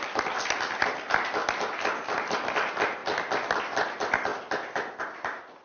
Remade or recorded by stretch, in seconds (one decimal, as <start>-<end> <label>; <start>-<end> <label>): 0.0-5.6 recorded